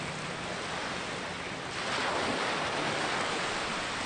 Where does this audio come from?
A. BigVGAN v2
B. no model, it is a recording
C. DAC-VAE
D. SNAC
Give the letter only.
B